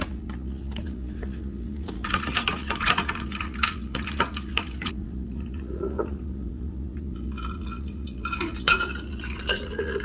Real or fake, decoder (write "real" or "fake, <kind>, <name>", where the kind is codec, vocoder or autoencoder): fake, vocoder, Vocos